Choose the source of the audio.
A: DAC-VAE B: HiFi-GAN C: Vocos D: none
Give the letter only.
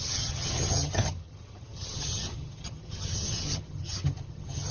B